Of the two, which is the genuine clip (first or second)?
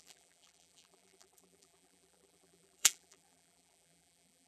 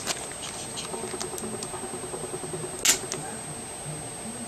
second